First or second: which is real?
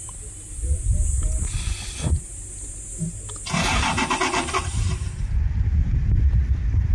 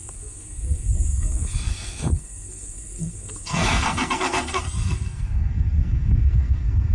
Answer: first